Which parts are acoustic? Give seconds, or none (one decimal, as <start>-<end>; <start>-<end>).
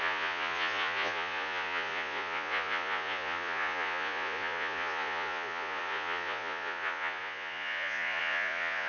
none